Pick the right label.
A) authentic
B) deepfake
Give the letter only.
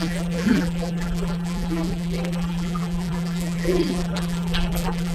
B